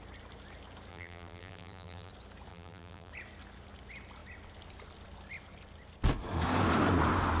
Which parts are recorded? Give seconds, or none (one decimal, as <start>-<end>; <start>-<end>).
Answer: 0.0-0.9; 2.1-2.5; 3.1-7.4

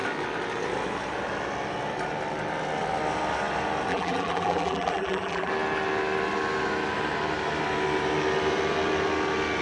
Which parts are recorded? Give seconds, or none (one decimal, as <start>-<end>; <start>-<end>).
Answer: 0.0-3.9; 5.5-9.6

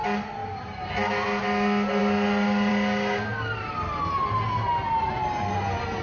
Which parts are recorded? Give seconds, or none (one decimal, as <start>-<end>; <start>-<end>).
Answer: 0.0-0.4; 0.9-6.0